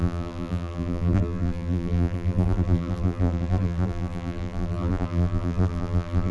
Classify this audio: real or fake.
fake